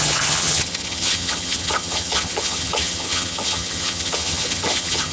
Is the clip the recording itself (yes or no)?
no